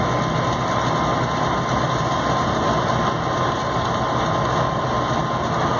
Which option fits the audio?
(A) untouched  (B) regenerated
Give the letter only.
A